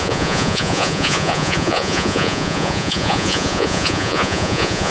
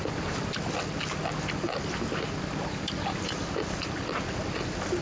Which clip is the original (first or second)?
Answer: second